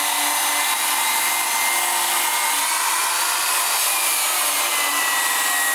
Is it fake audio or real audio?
real